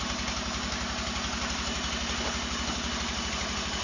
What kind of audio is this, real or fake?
real